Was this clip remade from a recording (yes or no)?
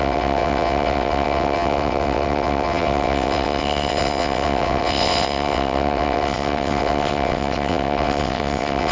yes